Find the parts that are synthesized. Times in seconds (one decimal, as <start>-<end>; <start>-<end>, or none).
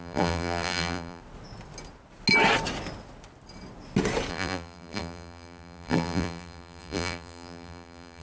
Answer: 0.0-1.2; 4.3-8.2